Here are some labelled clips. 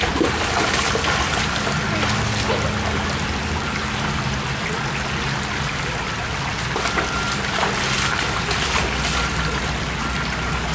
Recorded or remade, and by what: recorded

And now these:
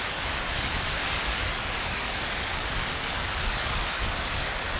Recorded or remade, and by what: remade, codec, DAC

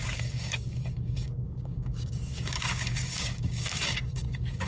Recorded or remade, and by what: remade, codec, DAC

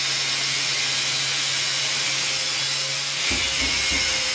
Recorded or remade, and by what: recorded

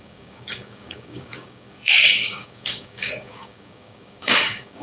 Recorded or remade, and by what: remade, codec, DAC